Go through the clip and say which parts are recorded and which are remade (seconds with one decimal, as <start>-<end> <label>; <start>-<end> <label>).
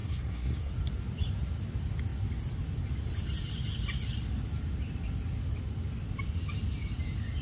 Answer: 0.0-0.7 remade; 0.7-7.4 recorded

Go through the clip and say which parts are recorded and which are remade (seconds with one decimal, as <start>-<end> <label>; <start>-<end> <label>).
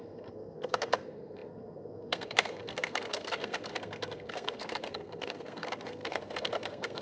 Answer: 0.0-7.0 remade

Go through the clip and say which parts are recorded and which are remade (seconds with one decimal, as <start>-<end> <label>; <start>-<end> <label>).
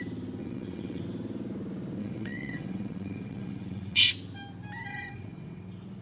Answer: 0.0-0.4 recorded; 0.4-1.0 remade; 1.0-2.0 recorded; 2.0-4.1 remade; 4.1-4.9 recorded; 4.9-5.6 remade; 5.6-6.0 recorded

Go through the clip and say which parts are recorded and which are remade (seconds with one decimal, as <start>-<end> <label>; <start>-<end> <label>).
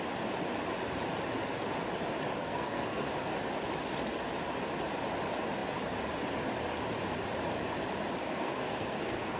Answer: 0.0-2.4 recorded; 2.4-3.1 remade; 3.1-8.2 recorded; 8.2-9.4 remade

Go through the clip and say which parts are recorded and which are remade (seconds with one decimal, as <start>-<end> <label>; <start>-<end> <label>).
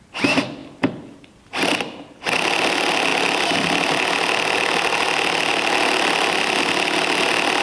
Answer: 0.0-7.6 recorded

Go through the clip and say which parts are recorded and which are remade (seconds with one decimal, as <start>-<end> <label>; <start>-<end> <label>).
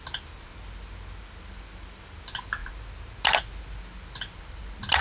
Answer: 0.0-5.0 recorded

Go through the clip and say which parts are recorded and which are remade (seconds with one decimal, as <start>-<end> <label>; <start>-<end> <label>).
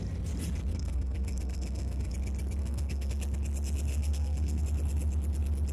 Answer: 0.0-0.7 recorded; 0.7-2.1 remade; 2.1-2.6 recorded; 2.6-3.1 remade; 3.1-3.9 recorded; 3.9-4.6 remade; 4.6-5.7 recorded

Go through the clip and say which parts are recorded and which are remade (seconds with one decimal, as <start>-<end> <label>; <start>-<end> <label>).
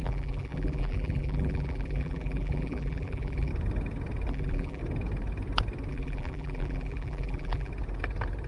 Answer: 0.0-3.5 remade; 3.5-4.3 recorded; 4.3-4.8 remade; 4.8-5.9 recorded; 5.9-7.7 remade; 7.7-8.5 recorded